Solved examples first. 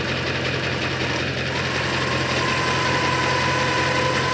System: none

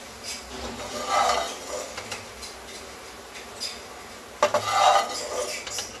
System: none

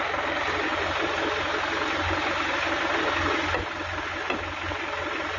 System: none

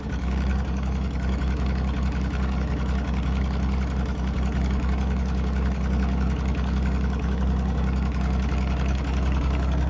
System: codec, DAC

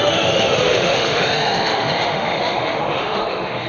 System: autoencoder, DAC-VAE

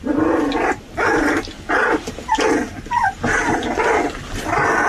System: none